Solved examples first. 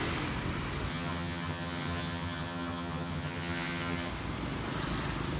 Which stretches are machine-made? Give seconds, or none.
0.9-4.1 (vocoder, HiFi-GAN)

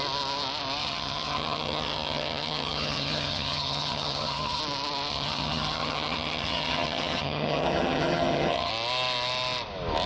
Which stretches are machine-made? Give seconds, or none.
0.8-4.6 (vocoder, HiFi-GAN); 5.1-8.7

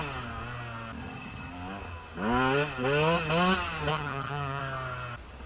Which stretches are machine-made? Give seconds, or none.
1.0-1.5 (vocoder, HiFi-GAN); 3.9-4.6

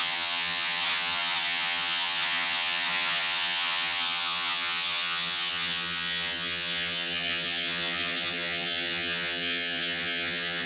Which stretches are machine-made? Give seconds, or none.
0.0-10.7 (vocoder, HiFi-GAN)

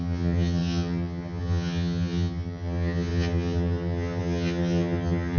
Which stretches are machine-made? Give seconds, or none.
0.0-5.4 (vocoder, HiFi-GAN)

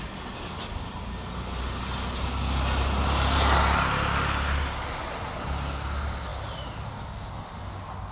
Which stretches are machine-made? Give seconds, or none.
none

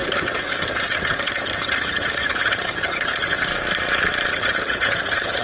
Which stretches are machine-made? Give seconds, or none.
0.0-3.5 (vocoder, HiFi-GAN); 4.3-5.4

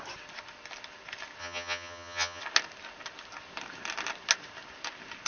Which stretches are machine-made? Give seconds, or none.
1.4-2.4 (vocoder, HiFi-GAN)